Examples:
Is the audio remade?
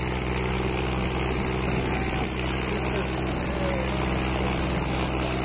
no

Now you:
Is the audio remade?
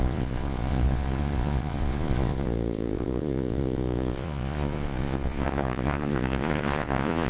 yes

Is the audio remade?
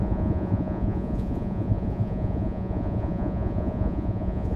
yes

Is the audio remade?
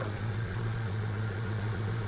yes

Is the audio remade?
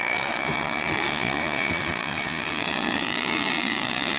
yes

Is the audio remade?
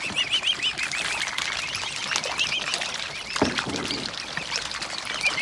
no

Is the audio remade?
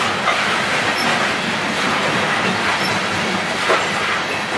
no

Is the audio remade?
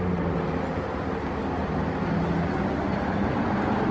no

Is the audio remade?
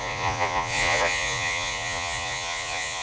yes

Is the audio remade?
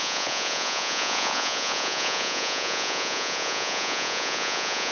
yes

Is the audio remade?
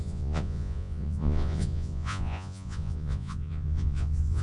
yes